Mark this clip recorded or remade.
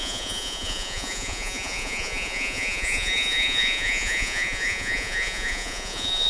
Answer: remade